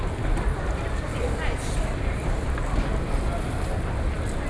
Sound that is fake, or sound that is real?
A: real